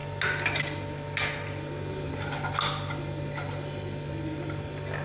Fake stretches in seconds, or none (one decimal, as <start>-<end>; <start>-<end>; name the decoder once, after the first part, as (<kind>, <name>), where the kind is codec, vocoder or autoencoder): none